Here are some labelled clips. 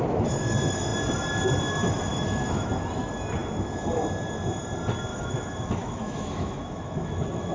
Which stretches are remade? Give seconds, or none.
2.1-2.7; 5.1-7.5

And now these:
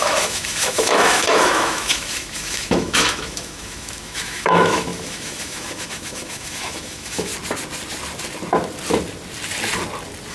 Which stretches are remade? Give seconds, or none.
0.0-7.3

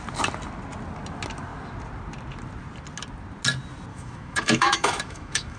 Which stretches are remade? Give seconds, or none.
3.9-5.6

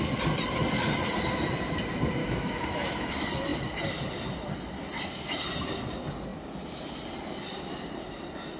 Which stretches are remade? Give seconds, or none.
2.2-3.1

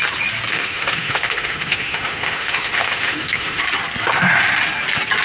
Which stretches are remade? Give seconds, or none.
0.5-3.6

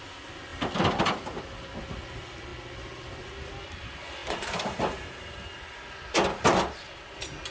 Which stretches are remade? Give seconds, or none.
none